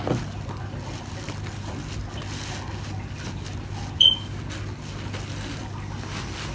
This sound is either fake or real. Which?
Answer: real